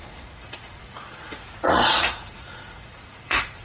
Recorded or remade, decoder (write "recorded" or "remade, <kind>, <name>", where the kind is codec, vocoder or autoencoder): remade, vocoder, Vocos